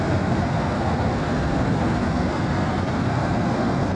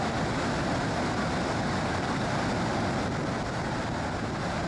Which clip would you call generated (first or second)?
first